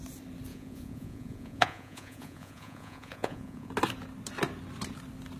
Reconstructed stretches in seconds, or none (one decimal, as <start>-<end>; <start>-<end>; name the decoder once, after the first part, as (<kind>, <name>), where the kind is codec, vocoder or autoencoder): 0.5-3.7 (vocoder, Vocos)